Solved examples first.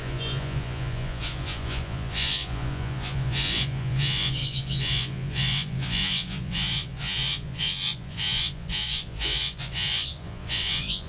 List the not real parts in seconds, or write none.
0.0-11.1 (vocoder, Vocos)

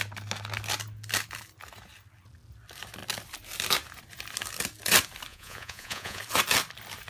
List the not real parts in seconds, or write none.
5.3-6.2 (vocoder, Vocos)

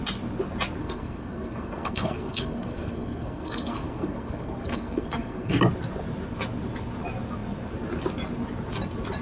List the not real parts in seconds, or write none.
0.8-5.6 (codec, SNAC)

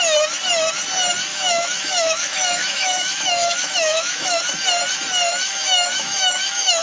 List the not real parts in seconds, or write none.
1.3-4.4 (autoencoder, DAC-VAE); 5.3-6.8

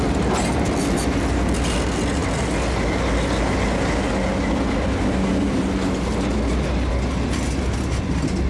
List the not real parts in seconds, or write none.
none

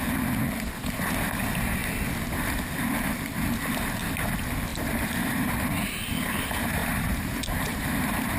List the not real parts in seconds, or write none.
4.7-5.7 (vocoder, BigVGAN v2); 6.8-8.4